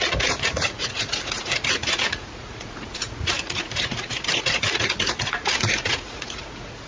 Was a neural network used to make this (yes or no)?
yes